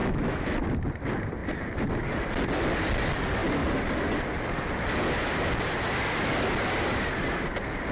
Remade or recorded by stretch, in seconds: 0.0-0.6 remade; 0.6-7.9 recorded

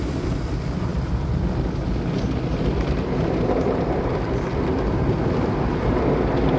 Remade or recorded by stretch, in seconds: 0.0-6.6 recorded

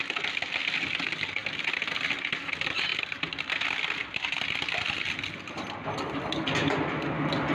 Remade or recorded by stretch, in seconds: 0.0-7.5 recorded

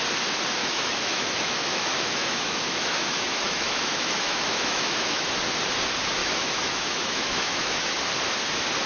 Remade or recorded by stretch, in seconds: 0.0-0.6 recorded; 0.6-5.3 remade; 5.3-6.2 recorded; 6.2-8.1 remade; 8.1-8.9 recorded

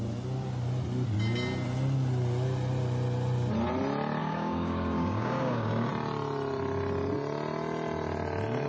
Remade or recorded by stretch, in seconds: 0.0-4.2 recorded; 4.2-5.9 remade; 5.9-8.7 recorded